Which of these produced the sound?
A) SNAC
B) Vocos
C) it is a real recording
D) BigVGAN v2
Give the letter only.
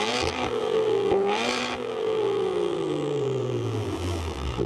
D